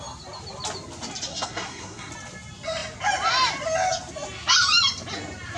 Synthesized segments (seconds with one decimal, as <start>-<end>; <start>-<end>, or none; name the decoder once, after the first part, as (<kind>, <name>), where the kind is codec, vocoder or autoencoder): 1.3-2.1 (codec, SNAC)